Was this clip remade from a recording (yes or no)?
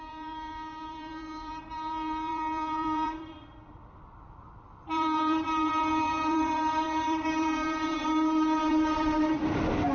yes